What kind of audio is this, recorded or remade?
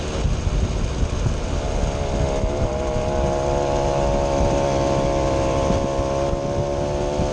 recorded